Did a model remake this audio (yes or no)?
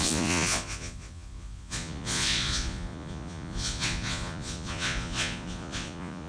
yes